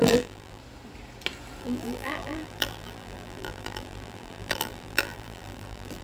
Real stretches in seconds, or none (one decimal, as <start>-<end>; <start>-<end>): 0.6-1.6